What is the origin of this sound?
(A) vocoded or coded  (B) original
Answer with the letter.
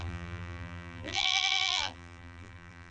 A